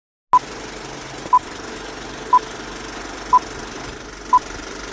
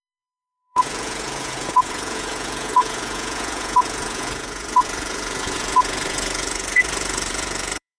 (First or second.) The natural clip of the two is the first